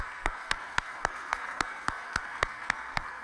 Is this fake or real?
fake